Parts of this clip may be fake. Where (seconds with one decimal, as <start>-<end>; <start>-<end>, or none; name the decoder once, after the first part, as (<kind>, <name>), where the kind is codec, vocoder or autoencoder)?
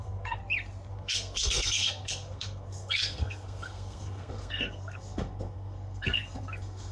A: 0.0-0.4 (codec, SNAC); 0.9-6.9